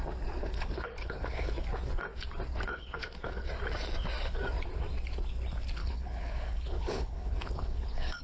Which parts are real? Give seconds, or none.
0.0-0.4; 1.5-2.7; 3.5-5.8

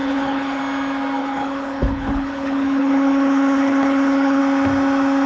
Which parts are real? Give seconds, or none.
0.6-1.2; 4.4-5.3